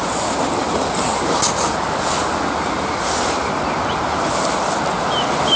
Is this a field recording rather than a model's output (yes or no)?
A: yes